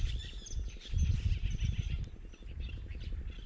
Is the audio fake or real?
real